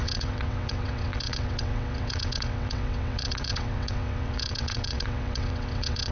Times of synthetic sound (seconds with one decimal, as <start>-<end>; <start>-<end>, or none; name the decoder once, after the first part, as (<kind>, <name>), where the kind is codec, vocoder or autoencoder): 0.0-6.1 (vocoder, WaveNeXt)